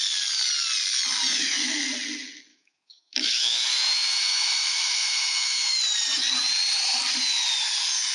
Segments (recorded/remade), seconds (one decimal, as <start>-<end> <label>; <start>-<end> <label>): 0.0-1.3 recorded; 1.3-1.9 remade; 1.9-2.5 recorded; 2.5-5.8 remade; 5.8-8.1 recorded